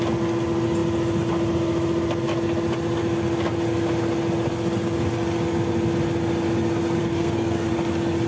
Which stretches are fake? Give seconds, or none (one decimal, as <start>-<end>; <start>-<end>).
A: 7.0-7.7